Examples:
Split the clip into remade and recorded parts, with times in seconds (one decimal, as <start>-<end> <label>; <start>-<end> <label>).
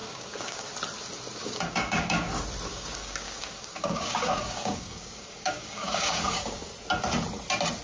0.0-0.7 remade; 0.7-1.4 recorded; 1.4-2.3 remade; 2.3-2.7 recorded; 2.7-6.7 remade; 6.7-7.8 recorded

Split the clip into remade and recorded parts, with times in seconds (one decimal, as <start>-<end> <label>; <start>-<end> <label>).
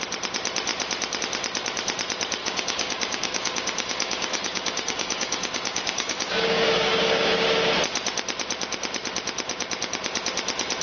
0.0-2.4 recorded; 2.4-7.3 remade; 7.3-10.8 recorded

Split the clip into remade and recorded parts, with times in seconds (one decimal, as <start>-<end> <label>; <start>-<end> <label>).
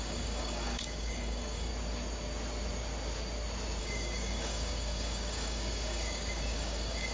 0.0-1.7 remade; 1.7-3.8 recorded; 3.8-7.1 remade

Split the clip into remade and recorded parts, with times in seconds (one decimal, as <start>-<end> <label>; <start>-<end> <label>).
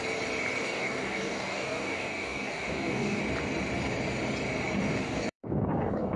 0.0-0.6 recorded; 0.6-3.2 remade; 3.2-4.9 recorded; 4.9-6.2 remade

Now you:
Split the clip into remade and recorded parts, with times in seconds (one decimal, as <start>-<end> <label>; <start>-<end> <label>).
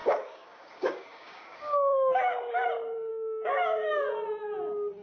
0.0-2.7 remade; 2.7-3.1 recorded; 3.1-3.9 remade; 3.9-5.0 recorded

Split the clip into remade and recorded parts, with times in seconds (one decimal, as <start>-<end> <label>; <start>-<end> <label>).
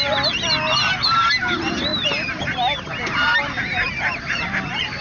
0.0-5.0 recorded